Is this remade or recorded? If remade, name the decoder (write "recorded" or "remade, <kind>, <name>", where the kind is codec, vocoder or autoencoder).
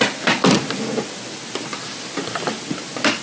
recorded